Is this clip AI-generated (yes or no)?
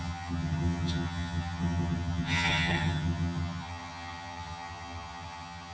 yes